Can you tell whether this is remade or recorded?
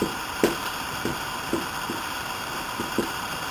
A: remade